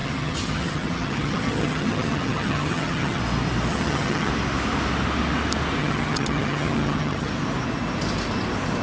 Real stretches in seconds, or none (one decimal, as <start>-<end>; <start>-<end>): 3.2-3.7; 4.3-5.8; 7.3-8.8